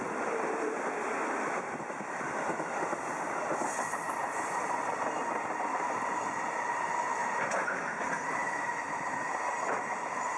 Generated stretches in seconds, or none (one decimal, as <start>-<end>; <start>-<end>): 0.0-7.2; 8.1-10.4